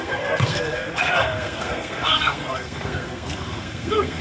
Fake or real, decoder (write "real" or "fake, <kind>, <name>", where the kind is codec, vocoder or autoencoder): fake, codec, SNAC